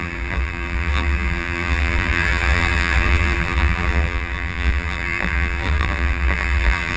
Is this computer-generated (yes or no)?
yes